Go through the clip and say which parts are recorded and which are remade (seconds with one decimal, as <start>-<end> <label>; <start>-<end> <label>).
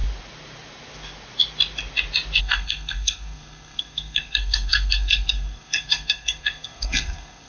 0.0-2.4 recorded; 2.4-7.5 remade